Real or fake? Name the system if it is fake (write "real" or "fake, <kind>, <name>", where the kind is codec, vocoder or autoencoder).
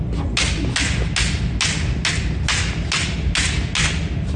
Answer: real